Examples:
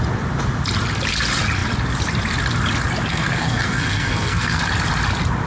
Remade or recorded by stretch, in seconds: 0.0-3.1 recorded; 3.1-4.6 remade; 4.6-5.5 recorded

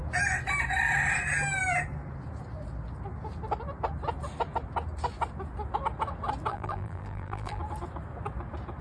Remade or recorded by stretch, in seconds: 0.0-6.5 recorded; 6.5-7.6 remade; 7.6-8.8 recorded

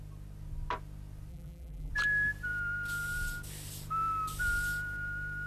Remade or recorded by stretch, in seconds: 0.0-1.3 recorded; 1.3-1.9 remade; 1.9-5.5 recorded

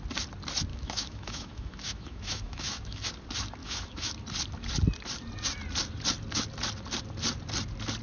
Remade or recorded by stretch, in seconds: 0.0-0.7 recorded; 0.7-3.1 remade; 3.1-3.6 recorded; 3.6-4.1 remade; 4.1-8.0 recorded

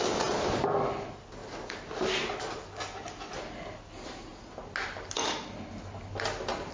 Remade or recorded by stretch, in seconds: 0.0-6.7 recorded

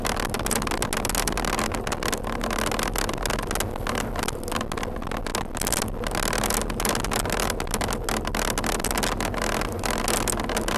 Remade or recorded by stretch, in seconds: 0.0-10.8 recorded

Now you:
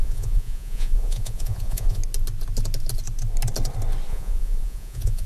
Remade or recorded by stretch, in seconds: 0.0-2.0 remade; 2.0-4.1 recorded; 4.1-5.3 remade

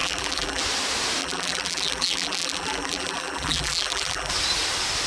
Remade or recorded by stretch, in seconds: 0.0-0.6 remade; 0.6-1.2 recorded; 1.2-4.3 remade; 4.3-5.1 recorded